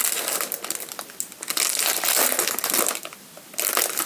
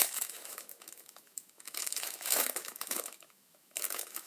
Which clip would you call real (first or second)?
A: first